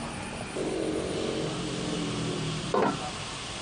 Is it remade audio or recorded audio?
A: recorded